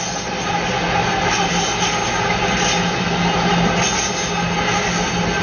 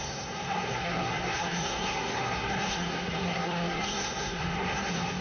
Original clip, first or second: first